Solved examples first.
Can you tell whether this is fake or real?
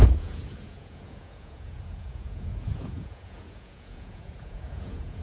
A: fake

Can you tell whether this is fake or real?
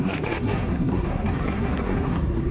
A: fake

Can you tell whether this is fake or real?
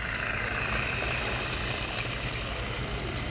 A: real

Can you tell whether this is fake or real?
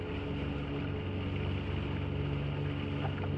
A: real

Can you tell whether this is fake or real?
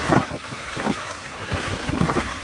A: fake